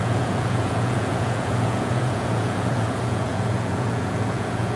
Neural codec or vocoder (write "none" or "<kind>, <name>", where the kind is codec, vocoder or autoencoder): vocoder, Vocos